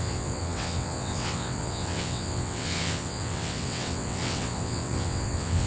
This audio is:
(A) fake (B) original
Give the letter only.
A